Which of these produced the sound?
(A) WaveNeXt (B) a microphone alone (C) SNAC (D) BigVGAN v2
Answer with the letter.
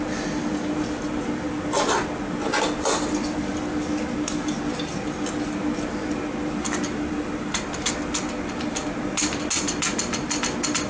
B